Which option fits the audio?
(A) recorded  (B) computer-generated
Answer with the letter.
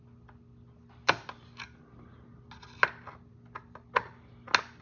A